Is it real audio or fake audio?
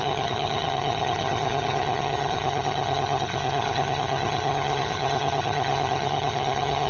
fake